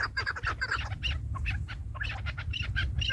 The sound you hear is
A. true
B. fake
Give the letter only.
A